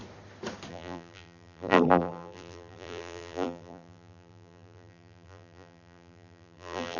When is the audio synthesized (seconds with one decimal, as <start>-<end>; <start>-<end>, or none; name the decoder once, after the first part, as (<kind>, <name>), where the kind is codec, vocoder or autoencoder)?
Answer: 0.7-7.0 (vocoder, BigVGAN v2)